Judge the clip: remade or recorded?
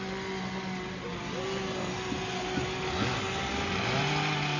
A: recorded